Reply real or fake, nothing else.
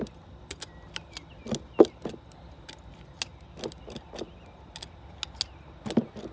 real